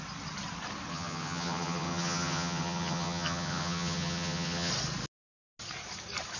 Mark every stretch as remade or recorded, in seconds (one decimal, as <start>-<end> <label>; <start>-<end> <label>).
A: 0.0-0.9 recorded; 0.9-4.7 remade; 4.7-6.4 recorded